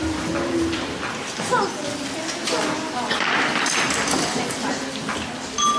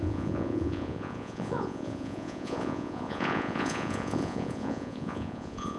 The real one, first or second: first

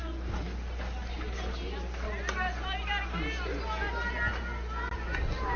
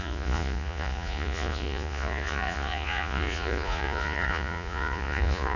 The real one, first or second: first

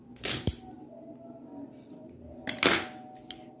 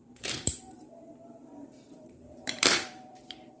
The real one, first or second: first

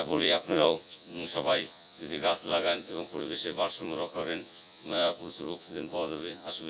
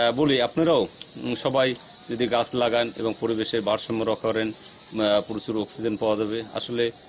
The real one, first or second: second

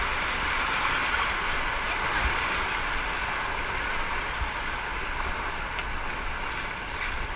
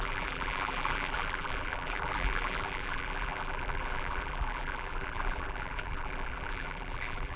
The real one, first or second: first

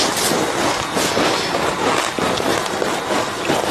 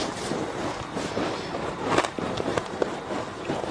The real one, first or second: first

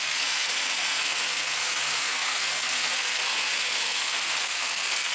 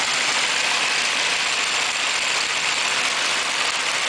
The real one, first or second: second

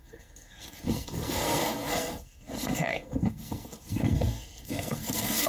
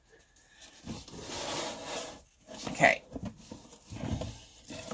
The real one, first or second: second